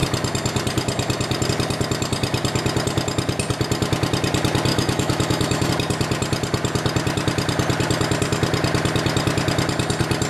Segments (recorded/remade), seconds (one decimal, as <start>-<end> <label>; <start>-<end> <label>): 0.0-4.7 recorded; 4.7-5.7 remade; 5.7-10.3 recorded